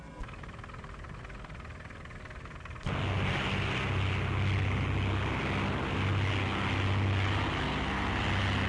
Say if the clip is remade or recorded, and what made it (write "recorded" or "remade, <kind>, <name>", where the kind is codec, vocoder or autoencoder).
recorded